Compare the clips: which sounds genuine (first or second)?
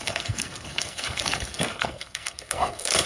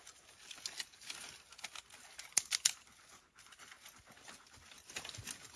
second